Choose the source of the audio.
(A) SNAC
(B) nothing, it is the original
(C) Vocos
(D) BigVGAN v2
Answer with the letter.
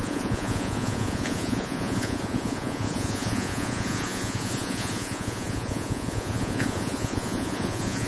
C